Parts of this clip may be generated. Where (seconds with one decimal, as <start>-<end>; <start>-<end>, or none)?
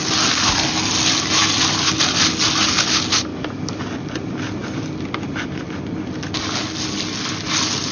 none